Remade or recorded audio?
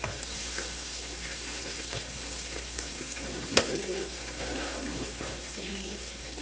remade